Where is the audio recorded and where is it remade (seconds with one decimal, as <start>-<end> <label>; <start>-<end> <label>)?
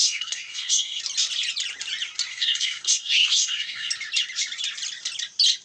0.0-1.0 remade; 1.0-2.3 recorded; 2.3-3.9 remade; 3.9-5.6 recorded